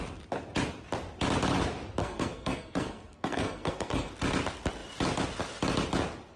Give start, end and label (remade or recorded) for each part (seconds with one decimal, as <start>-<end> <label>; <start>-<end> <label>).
0.0-2.0 recorded; 2.0-4.1 remade; 4.1-6.4 recorded